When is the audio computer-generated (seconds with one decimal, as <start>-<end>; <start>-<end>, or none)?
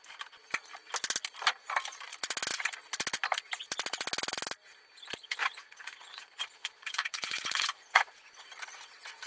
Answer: 5.4-8.4